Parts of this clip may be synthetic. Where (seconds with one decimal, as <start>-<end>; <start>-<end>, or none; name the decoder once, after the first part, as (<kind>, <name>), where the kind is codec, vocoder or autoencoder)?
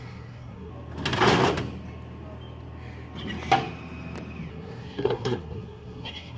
0.0-0.7 (codec, SNAC); 4.5-6.4